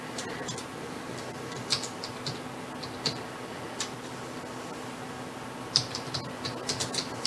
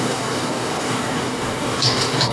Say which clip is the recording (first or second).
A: first